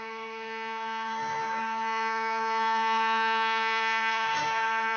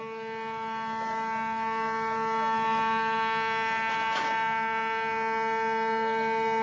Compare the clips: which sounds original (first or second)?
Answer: second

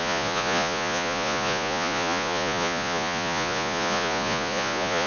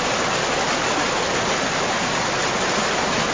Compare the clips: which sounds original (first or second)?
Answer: second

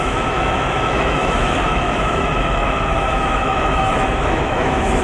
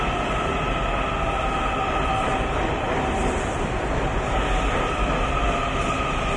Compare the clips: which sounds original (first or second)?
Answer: second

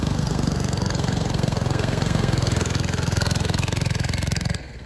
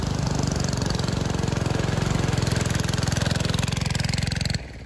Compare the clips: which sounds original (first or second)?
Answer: second